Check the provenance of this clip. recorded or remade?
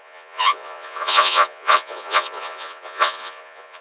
remade